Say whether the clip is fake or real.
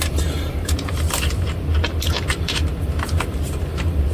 fake